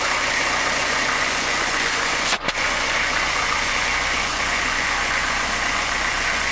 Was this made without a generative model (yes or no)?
no